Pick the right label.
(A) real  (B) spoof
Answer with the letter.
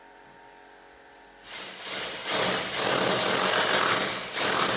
A